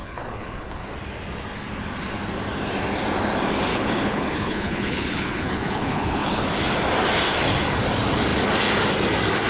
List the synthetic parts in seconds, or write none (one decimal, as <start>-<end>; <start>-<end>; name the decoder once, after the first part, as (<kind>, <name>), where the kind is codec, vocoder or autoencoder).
0.0-0.9 (codec, HILCodec); 3.7-6.4